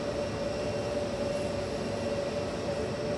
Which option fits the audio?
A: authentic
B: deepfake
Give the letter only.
A